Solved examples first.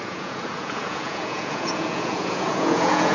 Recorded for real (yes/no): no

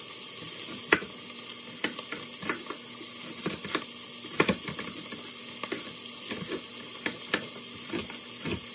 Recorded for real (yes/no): yes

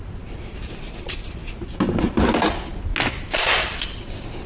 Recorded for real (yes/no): yes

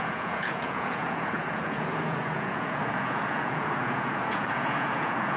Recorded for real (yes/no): no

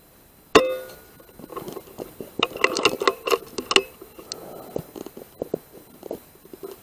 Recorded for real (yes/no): yes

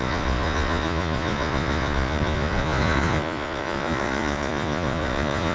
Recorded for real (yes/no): no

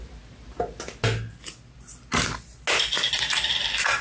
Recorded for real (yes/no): yes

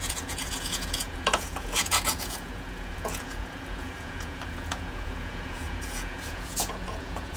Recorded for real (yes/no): no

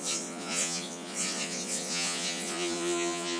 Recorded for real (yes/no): no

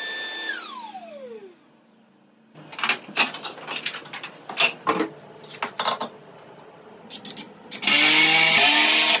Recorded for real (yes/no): yes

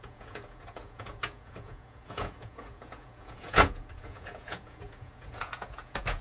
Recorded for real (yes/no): no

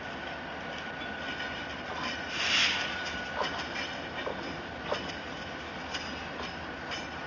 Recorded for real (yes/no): yes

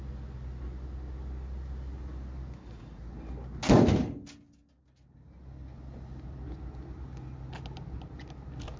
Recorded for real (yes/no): yes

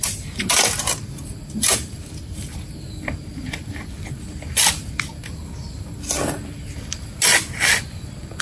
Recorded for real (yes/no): yes